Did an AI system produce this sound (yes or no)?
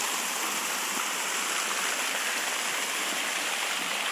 no